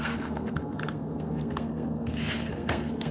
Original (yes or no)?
no